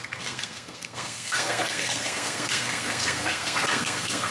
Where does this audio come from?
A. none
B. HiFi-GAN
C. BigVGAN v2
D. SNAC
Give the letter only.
D